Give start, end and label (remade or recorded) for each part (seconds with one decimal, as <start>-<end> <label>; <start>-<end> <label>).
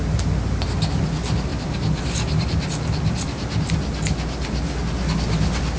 0.0-5.8 recorded